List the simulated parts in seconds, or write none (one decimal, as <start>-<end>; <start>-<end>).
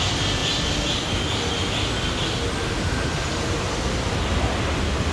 none